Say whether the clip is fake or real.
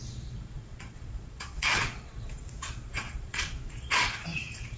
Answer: fake